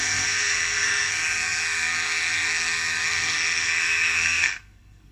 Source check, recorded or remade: remade